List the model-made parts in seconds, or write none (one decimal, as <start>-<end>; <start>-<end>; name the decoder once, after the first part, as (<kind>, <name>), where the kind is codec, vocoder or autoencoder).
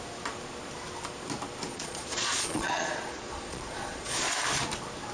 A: 1.7-4.3 (vocoder, Vocos)